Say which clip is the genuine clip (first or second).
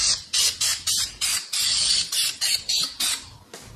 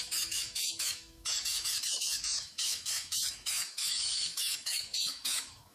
first